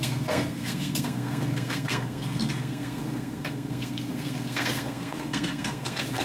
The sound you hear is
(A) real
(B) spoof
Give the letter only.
B